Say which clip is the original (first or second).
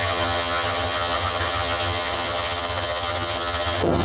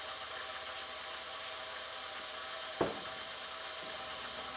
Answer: second